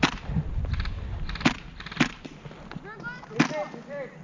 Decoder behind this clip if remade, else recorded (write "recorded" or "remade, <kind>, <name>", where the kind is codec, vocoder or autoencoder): recorded